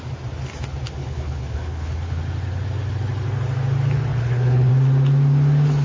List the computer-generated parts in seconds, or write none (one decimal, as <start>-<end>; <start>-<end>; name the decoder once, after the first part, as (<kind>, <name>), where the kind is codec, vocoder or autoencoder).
1.0-2.2 (codec, HILCodec); 4.1-4.7